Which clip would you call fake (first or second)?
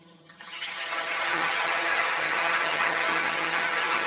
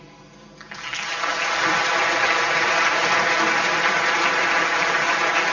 first